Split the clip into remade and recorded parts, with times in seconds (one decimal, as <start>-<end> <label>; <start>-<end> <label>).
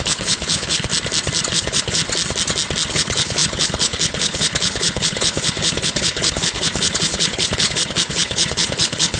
0.0-0.9 remade; 0.9-1.5 recorded; 1.5-2.0 remade; 2.0-2.9 recorded; 2.9-9.2 remade